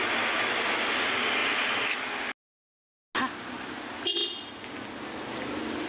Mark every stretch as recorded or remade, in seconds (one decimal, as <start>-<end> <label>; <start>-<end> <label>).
0.0-5.9 recorded